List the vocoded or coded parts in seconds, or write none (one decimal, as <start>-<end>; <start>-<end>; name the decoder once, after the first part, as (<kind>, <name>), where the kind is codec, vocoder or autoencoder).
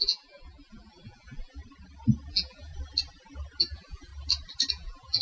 0.0-1.6 (vocoder, BigVGAN v2); 2.3-2.7; 3.6-4.1; 4.7-5.2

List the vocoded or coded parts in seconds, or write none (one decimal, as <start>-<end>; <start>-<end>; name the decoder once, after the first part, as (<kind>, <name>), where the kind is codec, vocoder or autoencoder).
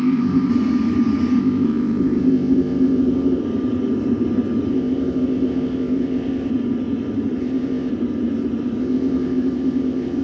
0.0-0.5 (codec, ZipCodec); 1.4-3.4; 4.7-6.5; 7.4-7.9; 8.8-10.2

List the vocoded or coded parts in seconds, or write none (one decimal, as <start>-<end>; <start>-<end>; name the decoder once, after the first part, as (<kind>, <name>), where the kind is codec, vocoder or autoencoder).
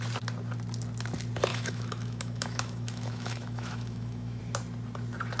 1.5-4.4 (autoencoder, DAC-VAE)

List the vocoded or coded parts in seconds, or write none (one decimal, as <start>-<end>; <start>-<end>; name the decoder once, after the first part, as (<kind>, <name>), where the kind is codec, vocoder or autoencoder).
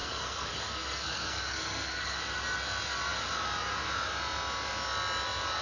0.0-2.2 (codec, SNAC)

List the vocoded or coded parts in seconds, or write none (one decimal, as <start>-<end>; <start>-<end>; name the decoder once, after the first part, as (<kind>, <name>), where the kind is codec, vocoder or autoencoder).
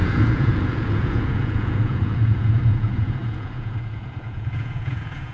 0.0-5.3 (vocoder, Vocos)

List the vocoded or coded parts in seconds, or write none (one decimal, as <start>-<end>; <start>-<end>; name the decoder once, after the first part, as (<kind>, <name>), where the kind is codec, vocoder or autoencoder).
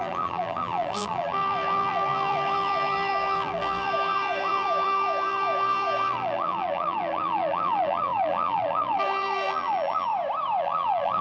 0.0-10.1 (vocoder, BigVGAN v2); 10.6-11.2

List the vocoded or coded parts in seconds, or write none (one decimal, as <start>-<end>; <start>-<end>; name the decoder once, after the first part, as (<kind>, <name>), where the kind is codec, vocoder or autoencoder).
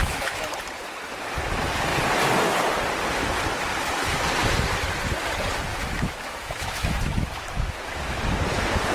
0.0-0.5 (autoencoder, DAC-VAE); 5.7-8.2